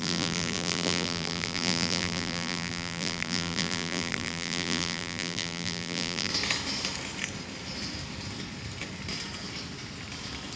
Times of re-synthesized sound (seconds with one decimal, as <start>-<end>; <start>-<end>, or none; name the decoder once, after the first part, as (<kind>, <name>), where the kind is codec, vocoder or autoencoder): 0.0-6.3 (vocoder, BigVGAN v2)